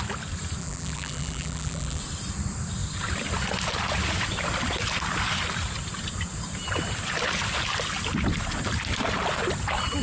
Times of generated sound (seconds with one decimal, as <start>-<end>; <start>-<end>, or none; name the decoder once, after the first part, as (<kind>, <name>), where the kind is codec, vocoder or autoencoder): 0.6-2.0 (vocoder, BigVGAN v2)